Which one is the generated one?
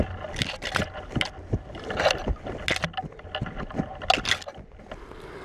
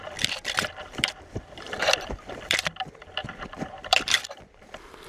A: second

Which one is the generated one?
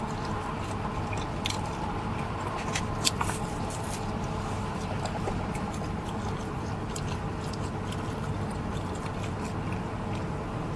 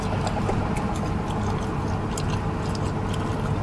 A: first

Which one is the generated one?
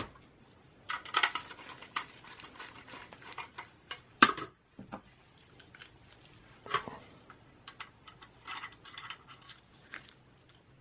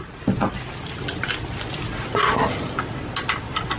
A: first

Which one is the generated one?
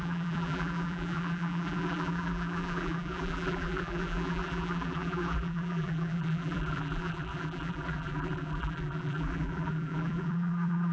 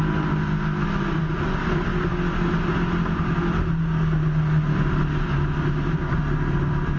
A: first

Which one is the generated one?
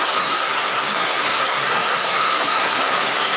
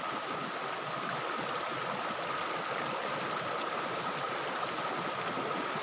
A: first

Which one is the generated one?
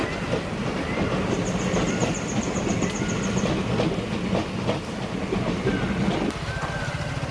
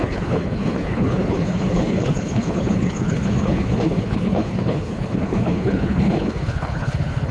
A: second